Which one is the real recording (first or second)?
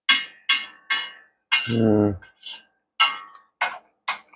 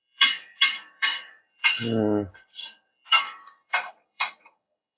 first